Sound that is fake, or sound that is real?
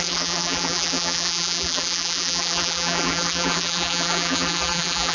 fake